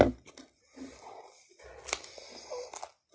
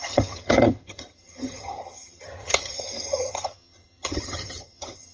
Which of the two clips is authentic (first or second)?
first